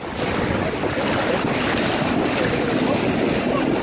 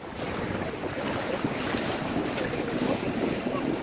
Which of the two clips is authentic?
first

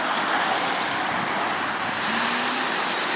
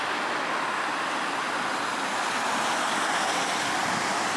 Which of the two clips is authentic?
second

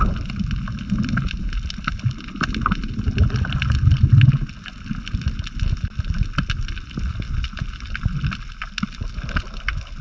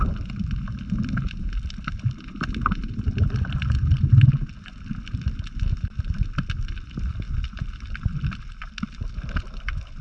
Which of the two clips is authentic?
first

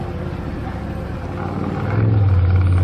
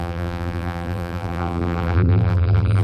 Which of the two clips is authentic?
first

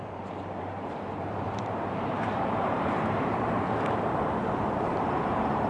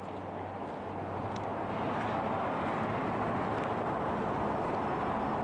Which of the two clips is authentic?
second